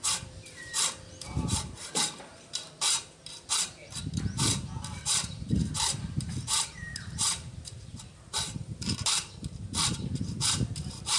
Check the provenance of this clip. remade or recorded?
remade